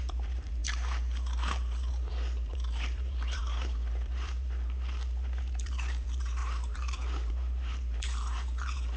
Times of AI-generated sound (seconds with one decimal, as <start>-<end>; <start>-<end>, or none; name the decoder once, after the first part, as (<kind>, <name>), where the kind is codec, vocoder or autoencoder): 0.0-9.0 (vocoder, BigVGAN v2)